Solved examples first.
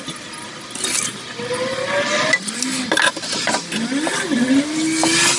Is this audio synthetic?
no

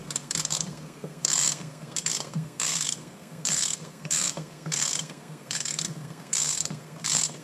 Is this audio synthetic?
yes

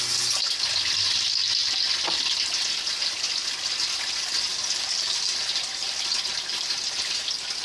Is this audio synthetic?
no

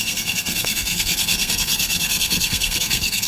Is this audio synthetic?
yes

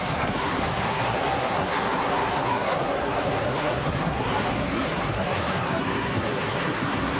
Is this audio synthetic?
yes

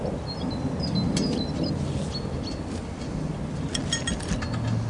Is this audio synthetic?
no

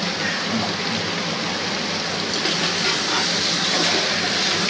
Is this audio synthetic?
no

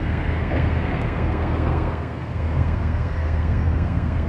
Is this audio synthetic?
yes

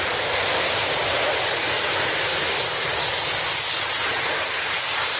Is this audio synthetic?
no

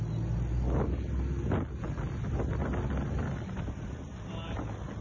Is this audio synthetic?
no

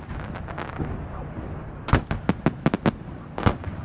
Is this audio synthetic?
no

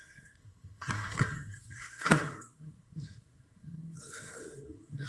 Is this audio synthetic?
yes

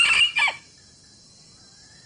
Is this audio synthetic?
no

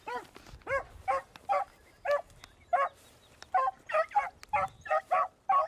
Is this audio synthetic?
no